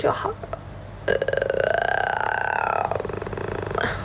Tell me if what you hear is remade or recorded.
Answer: recorded